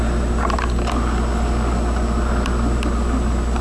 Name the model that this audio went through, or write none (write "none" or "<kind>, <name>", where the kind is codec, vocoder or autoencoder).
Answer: none